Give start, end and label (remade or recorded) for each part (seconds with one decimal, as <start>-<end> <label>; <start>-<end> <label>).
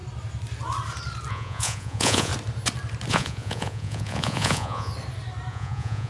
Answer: 0.0-1.3 recorded; 1.3-2.3 remade; 2.3-3.1 recorded; 3.1-4.9 remade; 4.9-5.5 recorded; 5.5-6.1 remade